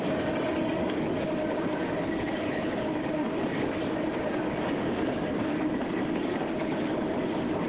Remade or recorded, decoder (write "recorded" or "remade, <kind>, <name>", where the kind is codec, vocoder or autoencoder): remade, codec, DAC